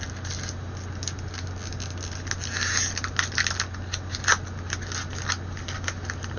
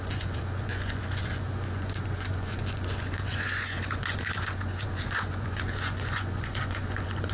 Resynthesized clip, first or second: second